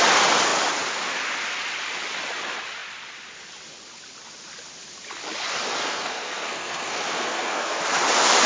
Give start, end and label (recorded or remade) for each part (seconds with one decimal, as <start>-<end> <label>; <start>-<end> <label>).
0.0-5.8 recorded; 5.8-7.8 remade; 7.8-8.5 recorded